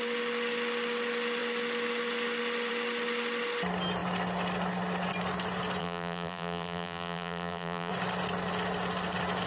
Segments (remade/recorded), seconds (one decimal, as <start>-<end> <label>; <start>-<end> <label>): 0.0-5.8 recorded; 5.8-7.9 remade; 7.9-9.5 recorded